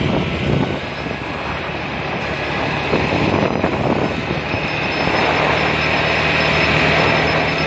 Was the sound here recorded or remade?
recorded